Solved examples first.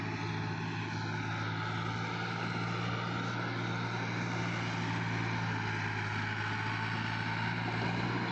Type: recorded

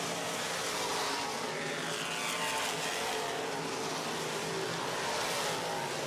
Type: recorded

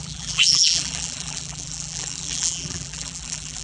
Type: remade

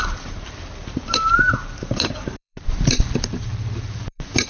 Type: remade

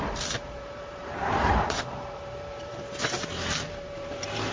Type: remade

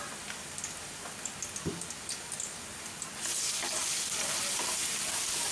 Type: recorded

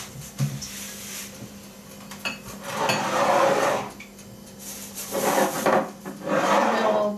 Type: recorded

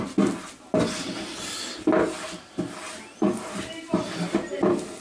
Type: recorded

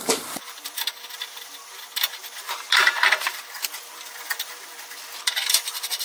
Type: remade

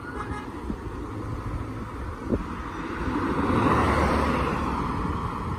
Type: recorded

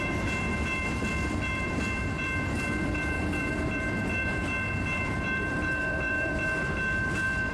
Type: remade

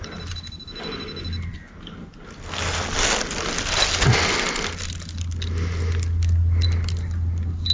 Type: recorded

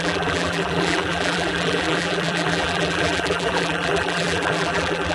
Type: remade